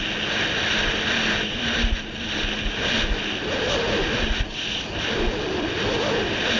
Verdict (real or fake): real